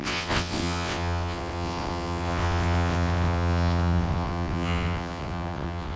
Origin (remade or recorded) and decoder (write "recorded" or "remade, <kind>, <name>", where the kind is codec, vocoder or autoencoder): remade, vocoder, WaveNeXt